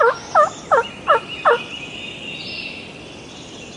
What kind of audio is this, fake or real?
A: real